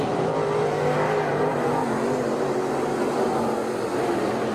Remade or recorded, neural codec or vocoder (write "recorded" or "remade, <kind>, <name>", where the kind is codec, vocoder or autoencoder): recorded